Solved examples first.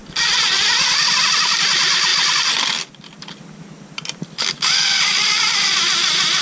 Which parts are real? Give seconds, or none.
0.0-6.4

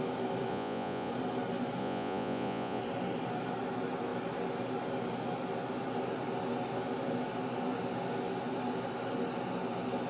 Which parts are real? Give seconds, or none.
0.0-0.5; 1.1-1.8; 2.8-10.1

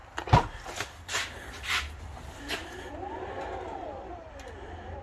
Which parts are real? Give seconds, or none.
0.0-5.0